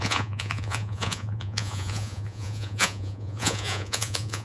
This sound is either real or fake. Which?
fake